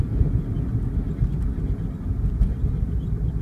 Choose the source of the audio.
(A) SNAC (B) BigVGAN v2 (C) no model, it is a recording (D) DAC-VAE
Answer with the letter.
C